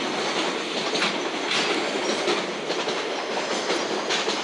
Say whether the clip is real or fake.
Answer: real